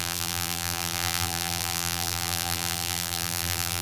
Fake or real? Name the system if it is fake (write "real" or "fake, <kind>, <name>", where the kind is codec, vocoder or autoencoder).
fake, vocoder, BigVGAN v2